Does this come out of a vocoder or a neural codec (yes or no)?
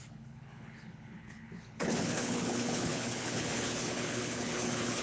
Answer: yes